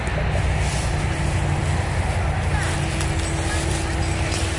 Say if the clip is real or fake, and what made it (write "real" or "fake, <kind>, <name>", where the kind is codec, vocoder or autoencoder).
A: real